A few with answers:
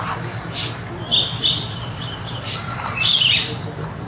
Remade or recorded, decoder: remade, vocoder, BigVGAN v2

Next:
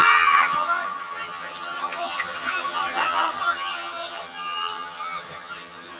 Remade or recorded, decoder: remade, vocoder, HiFi-GAN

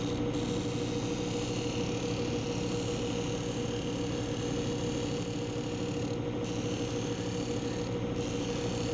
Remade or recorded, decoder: recorded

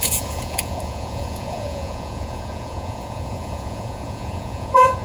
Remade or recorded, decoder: remade, vocoder, Vocos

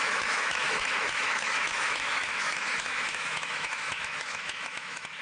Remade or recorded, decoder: remade, autoencoder, DAC-VAE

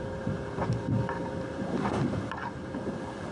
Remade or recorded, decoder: remade, vocoder, BigVGAN v2